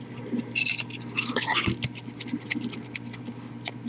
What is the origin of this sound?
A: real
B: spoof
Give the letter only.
A